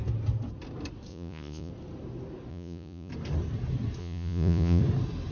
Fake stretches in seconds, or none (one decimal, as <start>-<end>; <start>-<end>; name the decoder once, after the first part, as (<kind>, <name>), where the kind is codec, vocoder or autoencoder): 1.1-1.7 (vocoder, Vocos); 2.5-3.1; 4.0-4.8